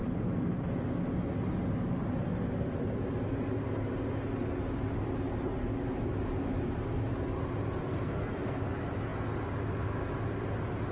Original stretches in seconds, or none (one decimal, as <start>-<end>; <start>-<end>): 0.0-7.9; 8.6-10.9